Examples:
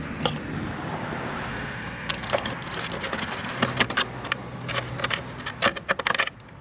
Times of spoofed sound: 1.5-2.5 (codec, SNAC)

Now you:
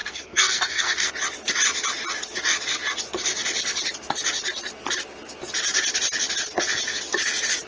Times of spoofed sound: 0.0-1.1 (codec, SNAC)

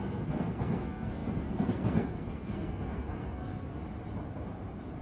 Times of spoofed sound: 0.0-3.8 (codec, SNAC)

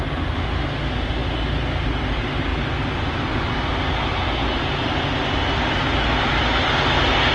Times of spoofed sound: none

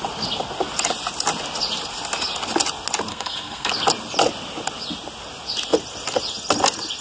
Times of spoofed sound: 3.1-3.7 (codec, SNAC)

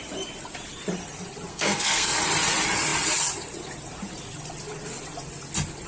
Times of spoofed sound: 1.5-2.2 (codec, SNAC)

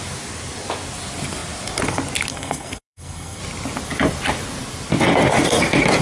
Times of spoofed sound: 2.3-3.4 (codec, SNAC)

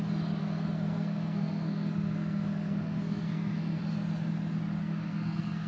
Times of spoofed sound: 0.4-3.8 (codec, SNAC); 4.8-5.7